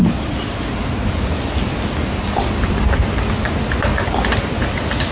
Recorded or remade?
recorded